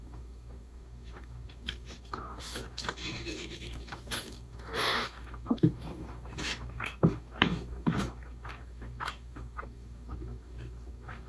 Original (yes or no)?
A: no